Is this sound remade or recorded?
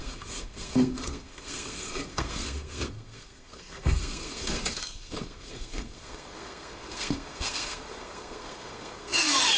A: remade